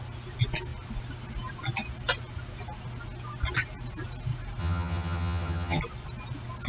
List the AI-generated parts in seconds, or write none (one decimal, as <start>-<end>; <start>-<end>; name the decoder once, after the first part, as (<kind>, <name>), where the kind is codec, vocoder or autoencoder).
4.6-5.8 (vocoder, HiFi-GAN)

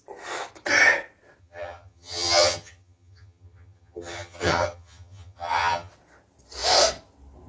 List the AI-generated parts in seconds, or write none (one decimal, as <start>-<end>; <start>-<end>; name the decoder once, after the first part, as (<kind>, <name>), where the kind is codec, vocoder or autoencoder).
1.4-5.9 (vocoder, HiFi-GAN)

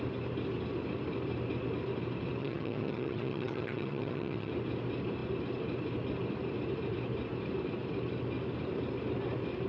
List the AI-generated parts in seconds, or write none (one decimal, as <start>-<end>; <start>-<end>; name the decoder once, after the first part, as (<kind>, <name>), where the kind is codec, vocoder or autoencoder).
2.4-4.5 (vocoder, HiFi-GAN)

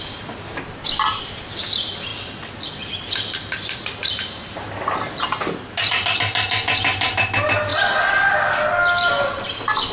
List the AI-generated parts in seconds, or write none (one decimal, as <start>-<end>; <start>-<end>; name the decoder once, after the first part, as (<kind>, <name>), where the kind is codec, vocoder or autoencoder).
none

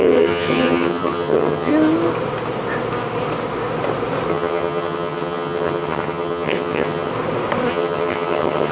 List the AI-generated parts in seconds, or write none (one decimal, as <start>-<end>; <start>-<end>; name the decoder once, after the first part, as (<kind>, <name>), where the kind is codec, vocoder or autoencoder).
0.0-1.7 (vocoder, HiFi-GAN); 4.3-7.1; 7.7-8.7

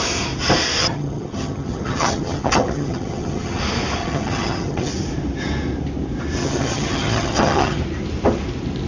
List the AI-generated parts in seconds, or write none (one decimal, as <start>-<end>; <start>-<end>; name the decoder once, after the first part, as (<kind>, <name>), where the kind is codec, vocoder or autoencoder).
0.8-3.6 (vocoder, HiFi-GAN); 4.0-4.9; 6.4-7.8

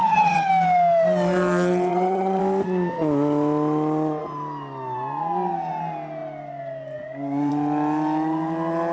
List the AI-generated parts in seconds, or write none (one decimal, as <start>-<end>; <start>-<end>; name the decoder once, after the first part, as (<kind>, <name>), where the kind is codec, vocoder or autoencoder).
0.0-0.5 (vocoder, HiFi-GAN); 1.9-2.4

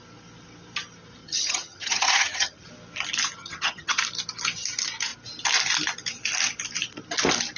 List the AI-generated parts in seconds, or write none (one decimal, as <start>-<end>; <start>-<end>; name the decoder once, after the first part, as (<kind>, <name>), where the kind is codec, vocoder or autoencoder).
1.2-2.7 (vocoder, HiFi-GAN); 3.4-4.0